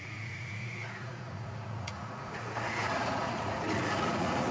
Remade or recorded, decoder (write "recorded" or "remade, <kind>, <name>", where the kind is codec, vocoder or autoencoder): remade, vocoder, Vocos